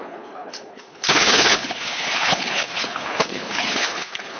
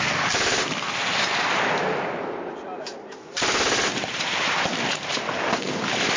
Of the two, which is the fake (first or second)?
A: first